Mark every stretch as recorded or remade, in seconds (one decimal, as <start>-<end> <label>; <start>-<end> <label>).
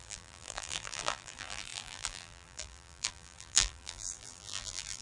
0.0-5.0 remade